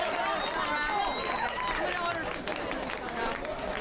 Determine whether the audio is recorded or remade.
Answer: recorded